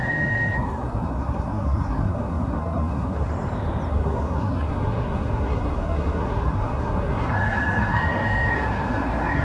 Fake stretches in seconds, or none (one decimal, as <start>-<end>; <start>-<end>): 0.0-3.3; 3.9-9.4